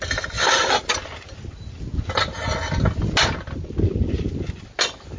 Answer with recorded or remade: recorded